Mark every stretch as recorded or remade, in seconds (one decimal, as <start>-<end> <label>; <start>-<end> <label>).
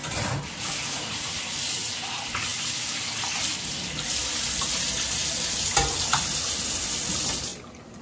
0.0-0.7 remade; 0.7-8.0 recorded